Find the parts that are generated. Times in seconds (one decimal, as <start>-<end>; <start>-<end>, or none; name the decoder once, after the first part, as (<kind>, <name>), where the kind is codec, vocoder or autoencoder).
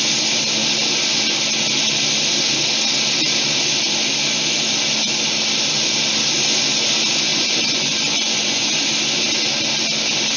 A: 7.3-8.8 (vocoder, Vocos)